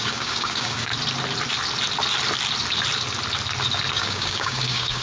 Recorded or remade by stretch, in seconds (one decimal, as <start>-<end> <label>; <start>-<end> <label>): 0.0-0.9 remade; 0.9-3.9 recorded; 3.9-5.0 remade